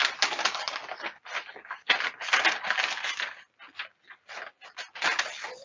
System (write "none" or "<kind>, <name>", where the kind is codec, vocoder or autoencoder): none